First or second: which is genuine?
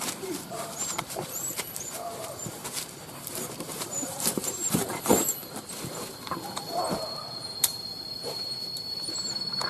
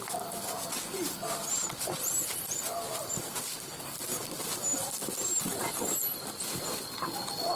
second